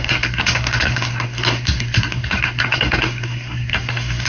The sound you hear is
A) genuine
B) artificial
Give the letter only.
B